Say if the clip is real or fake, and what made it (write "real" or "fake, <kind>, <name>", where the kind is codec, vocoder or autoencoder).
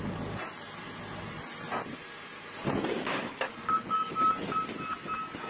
real